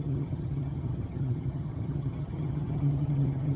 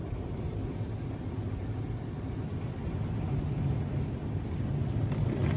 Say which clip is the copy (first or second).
first